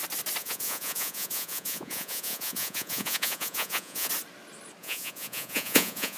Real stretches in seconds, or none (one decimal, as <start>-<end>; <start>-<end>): 0.0-0.4; 4.1-4.8